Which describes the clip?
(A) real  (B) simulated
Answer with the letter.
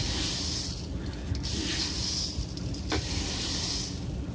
A